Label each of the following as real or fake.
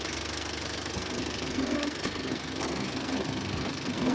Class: fake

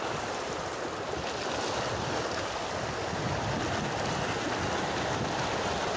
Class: real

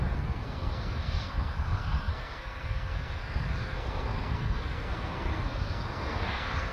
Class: fake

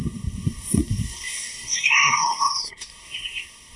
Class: fake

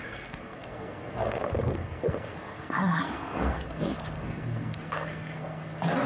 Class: fake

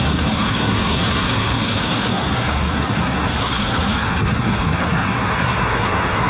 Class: fake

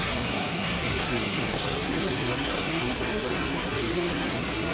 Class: fake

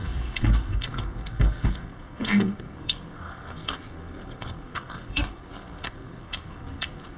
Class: fake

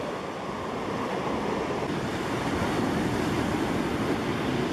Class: real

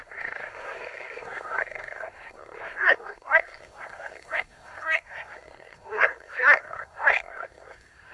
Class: fake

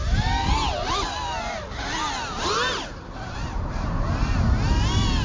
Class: real